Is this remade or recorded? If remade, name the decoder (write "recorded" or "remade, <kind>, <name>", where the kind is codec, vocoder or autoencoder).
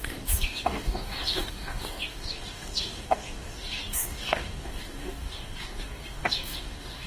remade, codec, DAC